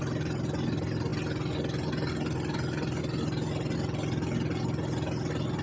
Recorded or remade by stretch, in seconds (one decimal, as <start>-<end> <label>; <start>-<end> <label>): 0.0-5.6 recorded